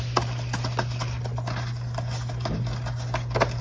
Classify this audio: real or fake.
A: real